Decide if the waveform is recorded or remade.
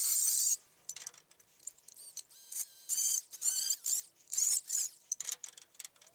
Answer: remade